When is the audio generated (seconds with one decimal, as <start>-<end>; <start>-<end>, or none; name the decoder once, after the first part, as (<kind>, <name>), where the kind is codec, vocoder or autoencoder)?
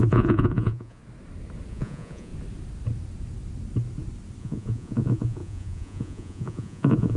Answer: 0.0-1.0 (vocoder, Vocos); 1.7-2.3; 4.4-7.2